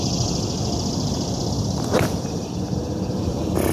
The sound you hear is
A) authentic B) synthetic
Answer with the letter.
B